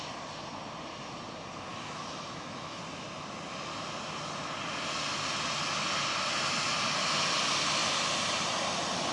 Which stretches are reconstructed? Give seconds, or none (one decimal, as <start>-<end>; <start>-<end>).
1.7-2.8